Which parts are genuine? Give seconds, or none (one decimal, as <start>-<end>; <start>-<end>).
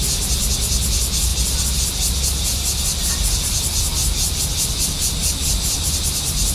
0.0-5.2; 6.0-6.5